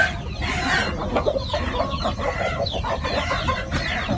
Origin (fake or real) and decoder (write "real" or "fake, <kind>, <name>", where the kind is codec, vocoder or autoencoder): real